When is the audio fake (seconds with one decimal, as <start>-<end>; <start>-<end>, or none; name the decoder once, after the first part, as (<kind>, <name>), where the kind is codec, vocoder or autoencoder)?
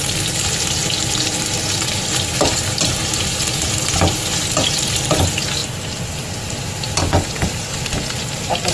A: 0.8-2.6 (vocoder, BigVGAN v2)